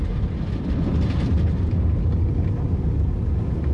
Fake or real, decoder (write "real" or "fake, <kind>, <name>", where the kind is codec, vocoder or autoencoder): real